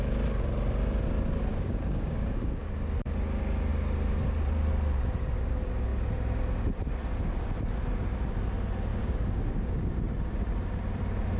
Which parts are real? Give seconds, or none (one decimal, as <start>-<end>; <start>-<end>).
0.0-1.5; 2.7-8.9; 9.9-11.4